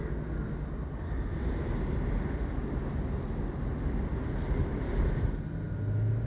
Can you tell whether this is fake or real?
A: real